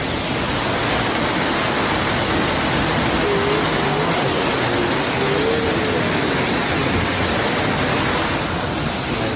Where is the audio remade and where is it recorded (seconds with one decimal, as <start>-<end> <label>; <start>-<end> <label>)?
0.0-9.4 recorded